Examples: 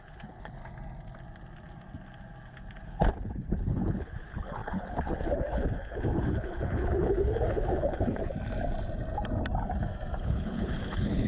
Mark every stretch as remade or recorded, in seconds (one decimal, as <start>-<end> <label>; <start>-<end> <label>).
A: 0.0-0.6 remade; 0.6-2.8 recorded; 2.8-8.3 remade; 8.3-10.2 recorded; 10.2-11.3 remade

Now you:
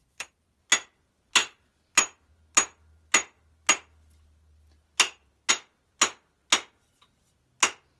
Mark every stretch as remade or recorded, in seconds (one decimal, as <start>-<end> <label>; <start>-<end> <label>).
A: 0.0-8.0 recorded

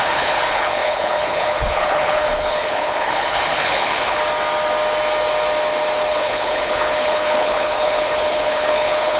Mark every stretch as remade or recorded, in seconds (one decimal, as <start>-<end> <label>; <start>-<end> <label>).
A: 0.0-4.2 remade; 4.2-6.1 recorded; 6.1-9.2 remade

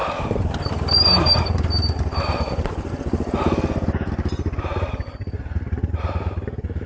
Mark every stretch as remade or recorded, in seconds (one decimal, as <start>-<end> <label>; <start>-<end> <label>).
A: 0.0-6.9 recorded

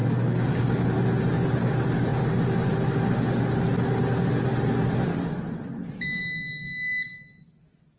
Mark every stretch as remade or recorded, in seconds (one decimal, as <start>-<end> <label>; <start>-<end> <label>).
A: 0.0-8.0 recorded

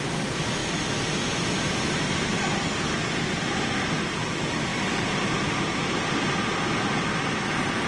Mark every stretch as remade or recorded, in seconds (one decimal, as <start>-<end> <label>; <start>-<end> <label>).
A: 0.0-7.9 recorded

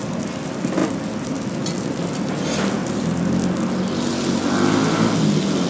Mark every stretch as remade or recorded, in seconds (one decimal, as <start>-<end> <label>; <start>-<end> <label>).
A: 0.0-5.7 recorded

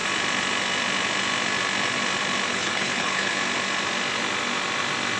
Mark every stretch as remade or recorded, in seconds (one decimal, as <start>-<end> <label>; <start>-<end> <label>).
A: 0.0-2.5 recorded; 2.5-3.3 remade; 3.3-5.2 recorded